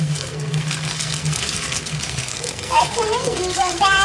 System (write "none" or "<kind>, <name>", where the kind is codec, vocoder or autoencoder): codec, SNAC